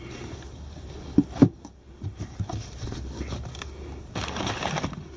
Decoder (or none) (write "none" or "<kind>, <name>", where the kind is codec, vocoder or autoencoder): none